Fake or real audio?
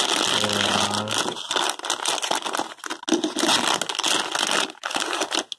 real